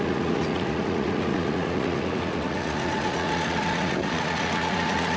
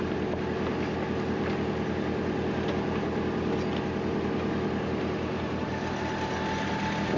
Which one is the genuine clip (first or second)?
second